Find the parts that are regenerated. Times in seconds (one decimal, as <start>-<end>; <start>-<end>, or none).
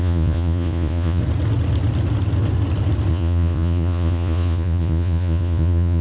0.0-1.2; 3.1-6.0